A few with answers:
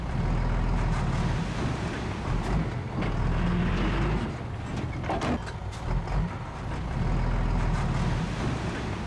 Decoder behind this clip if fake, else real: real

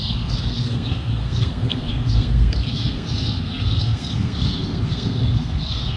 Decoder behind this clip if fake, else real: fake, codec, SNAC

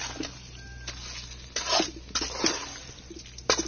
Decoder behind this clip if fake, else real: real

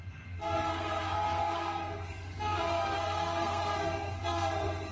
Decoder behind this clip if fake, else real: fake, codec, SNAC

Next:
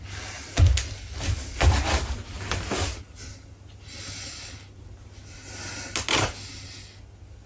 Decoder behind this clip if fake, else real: real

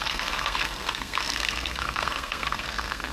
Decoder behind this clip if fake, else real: fake, codec, SNAC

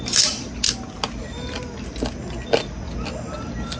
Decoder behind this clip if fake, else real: real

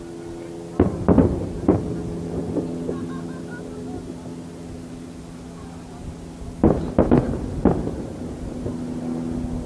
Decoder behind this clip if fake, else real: real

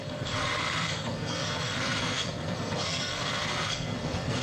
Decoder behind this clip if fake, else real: fake, codec, SNAC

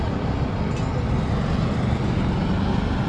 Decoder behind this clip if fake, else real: real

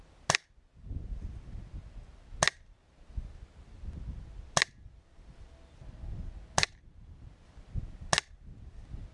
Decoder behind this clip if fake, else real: real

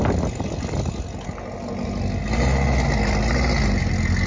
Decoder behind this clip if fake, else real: real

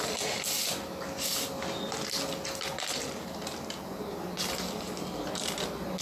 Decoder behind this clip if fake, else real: real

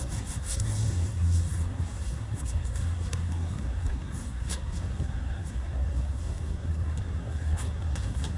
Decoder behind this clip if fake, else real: fake, codec, SNAC